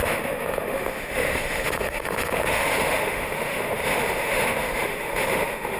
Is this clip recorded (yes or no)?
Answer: no